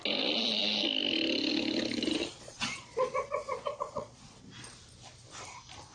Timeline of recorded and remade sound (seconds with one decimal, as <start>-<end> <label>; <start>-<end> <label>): 0.0-2.2 recorded; 2.2-4.4 remade; 4.4-5.9 recorded